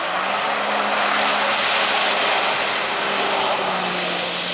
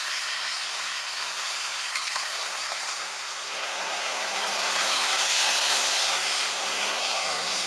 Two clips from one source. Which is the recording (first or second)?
first